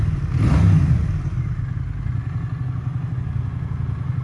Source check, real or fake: real